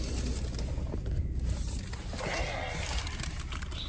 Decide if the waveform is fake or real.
real